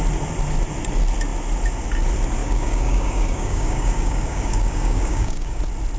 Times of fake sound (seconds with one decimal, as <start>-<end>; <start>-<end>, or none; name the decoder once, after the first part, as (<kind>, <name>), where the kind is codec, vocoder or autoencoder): 2.4-5.6 (codec, DAC)